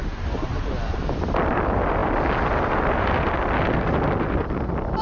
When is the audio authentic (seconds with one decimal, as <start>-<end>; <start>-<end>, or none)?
0.0-5.0